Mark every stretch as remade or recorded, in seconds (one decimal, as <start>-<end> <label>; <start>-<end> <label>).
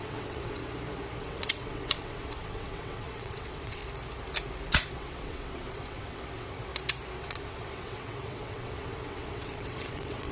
0.0-0.6 remade; 0.6-1.2 recorded; 1.2-3.8 remade; 3.8-4.7 recorded; 4.7-6.7 remade; 6.7-7.2 recorded; 7.2-10.3 remade